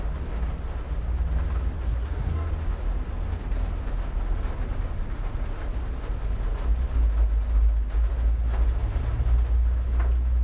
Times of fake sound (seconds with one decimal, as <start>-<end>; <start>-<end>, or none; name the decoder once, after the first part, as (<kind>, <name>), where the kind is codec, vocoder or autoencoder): 1.9-2.5 (codec, SNAC)